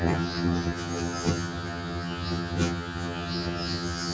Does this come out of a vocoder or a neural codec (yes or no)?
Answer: yes